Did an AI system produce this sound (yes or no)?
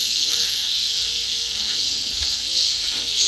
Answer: yes